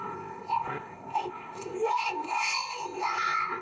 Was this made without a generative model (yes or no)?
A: no